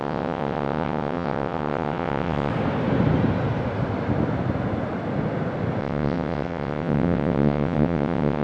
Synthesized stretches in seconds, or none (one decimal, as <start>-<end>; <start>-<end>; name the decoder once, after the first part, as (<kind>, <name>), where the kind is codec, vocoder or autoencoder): 0.0-2.5 (vocoder, WaveNeXt); 5.8-8.4